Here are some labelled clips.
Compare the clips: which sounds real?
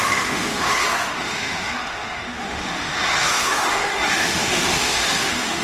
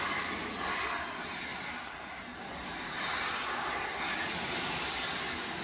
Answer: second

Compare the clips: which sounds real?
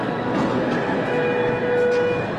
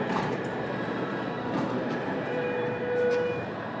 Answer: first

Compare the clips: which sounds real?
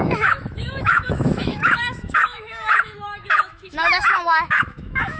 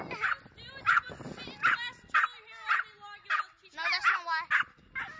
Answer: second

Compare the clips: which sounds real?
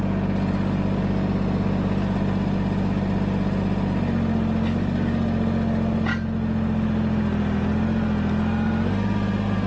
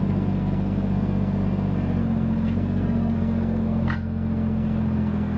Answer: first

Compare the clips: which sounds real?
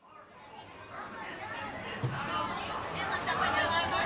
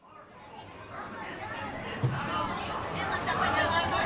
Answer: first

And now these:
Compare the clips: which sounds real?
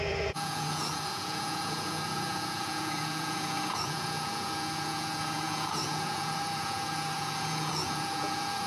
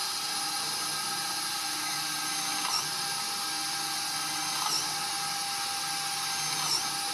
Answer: second